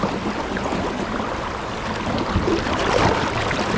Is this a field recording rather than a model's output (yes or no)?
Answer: yes